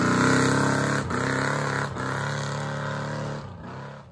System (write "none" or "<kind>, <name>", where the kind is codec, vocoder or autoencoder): none